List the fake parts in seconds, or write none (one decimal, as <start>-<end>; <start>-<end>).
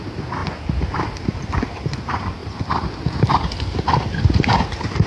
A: none